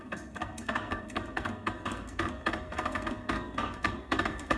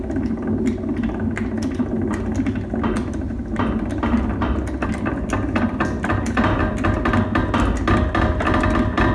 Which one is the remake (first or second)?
first